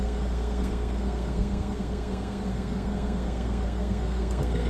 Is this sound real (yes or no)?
no